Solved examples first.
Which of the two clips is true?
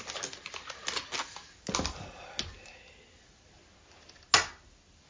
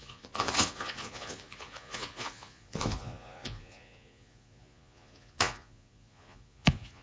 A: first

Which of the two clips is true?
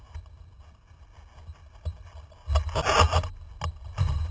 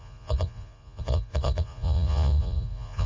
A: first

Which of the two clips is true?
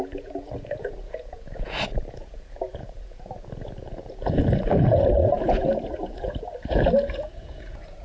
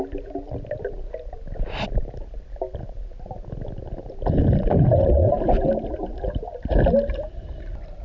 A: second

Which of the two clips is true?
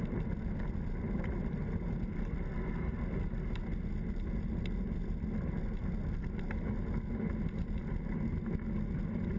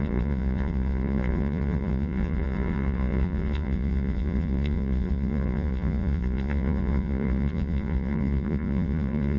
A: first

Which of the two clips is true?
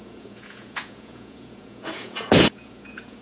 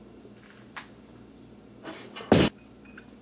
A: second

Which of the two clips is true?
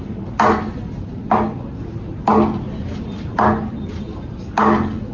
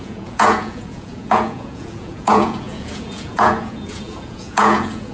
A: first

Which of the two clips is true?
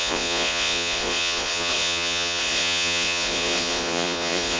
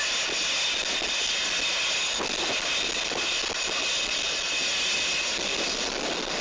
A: second